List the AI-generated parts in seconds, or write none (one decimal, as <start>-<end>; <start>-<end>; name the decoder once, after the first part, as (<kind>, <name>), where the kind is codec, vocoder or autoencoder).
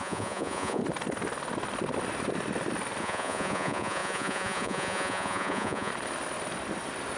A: 0.0-0.8 (vocoder, Vocos); 3.0-5.9